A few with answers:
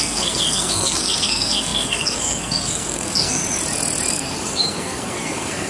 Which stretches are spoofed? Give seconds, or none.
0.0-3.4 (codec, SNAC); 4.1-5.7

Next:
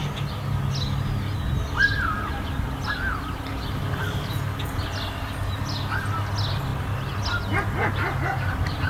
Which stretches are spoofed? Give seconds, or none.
none

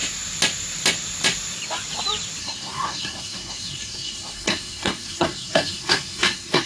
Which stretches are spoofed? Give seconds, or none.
2.4-6.7 (codec, SNAC)